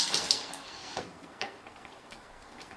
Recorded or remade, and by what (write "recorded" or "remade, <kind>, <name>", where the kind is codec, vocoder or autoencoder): remade, codec, SNAC